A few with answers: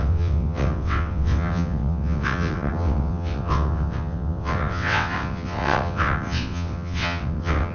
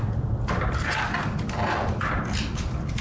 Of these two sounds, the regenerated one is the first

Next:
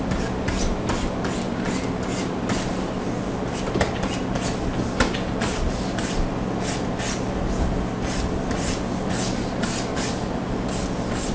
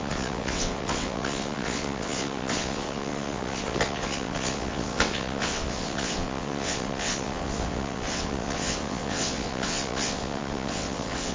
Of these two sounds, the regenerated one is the second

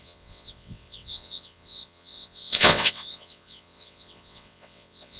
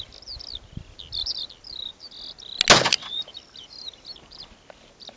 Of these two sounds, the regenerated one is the first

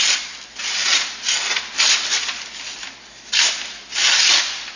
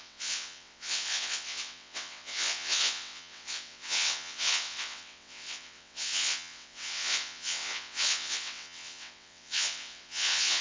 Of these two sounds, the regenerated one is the second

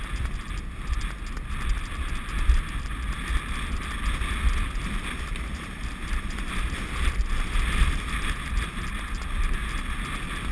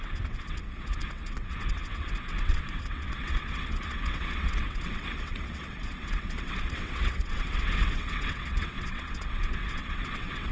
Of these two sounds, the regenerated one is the second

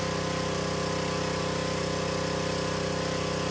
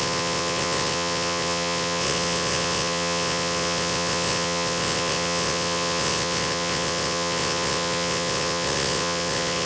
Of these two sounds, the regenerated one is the second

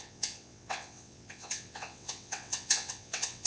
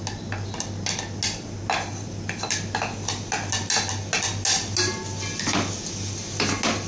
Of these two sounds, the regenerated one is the first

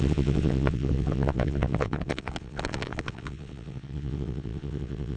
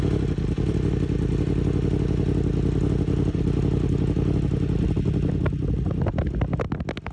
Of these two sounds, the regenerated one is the first